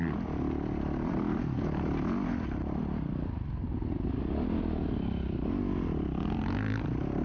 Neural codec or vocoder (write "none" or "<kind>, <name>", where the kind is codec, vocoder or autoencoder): none